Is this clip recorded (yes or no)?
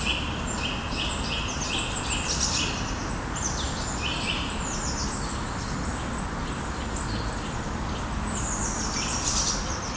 yes